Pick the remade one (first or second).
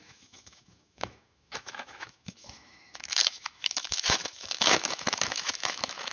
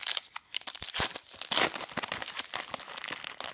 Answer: first